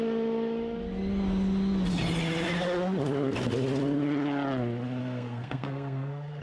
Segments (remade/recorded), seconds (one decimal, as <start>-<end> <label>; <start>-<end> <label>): 0.0-5.0 recorded; 5.0-6.4 remade